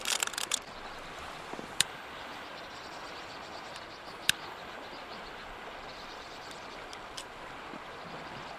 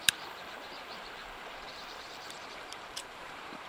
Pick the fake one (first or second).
second